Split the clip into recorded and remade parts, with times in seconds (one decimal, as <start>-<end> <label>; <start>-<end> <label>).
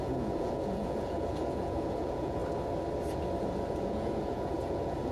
0.0-2.4 remade; 2.4-3.4 recorded; 3.4-5.1 remade